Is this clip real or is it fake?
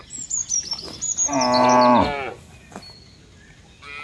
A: real